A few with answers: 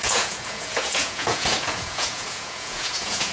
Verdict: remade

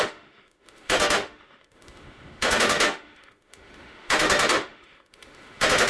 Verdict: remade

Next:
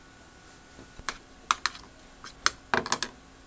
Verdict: recorded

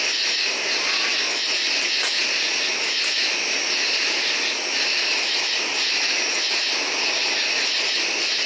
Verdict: recorded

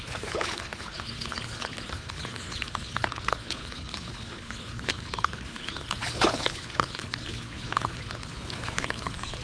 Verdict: remade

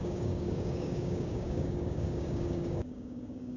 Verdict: remade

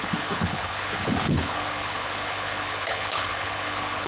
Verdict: remade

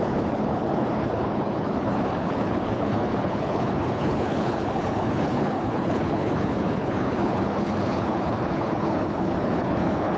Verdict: remade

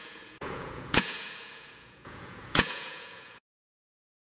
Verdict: remade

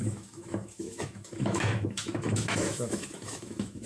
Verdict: remade